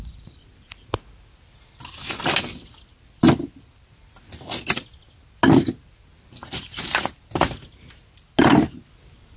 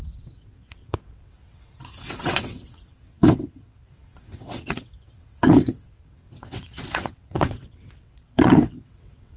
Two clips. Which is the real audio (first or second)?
first